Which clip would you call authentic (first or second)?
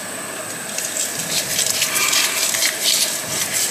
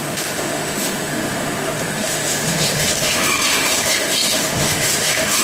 first